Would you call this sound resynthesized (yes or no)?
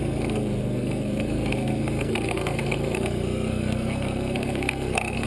yes